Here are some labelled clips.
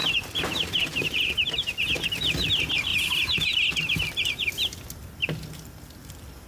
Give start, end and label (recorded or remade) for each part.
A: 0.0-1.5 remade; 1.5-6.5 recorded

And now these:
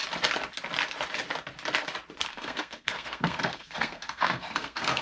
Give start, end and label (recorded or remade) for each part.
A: 0.0-2.3 recorded; 2.3-5.0 remade

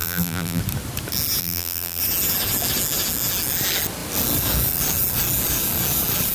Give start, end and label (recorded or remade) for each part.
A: 0.0-0.6 remade; 0.6-1.4 recorded; 1.4-2.0 remade; 2.0-6.3 recorded

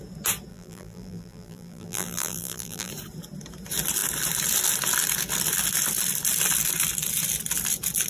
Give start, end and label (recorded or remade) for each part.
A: 0.0-0.5 recorded; 0.5-2.9 remade; 2.9-8.1 recorded

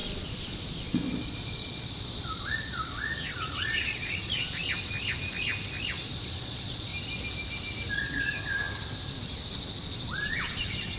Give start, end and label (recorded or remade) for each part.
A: 0.0-4.6 remade; 4.6-6.0 recorded; 6.0-6.9 remade; 6.9-7.9 recorded; 7.9-8.3 remade; 8.3-10.6 recorded; 10.6-11.0 remade